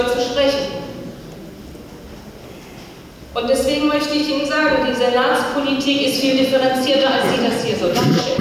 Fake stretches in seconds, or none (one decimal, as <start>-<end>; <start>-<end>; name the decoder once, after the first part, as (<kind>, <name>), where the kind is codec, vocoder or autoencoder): none